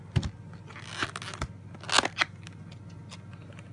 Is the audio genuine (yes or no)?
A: yes